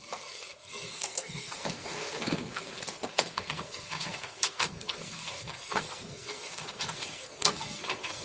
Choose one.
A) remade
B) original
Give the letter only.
A